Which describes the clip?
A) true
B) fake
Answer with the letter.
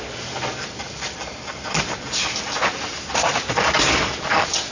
A